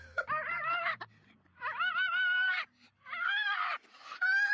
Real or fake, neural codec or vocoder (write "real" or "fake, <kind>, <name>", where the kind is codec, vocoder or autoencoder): real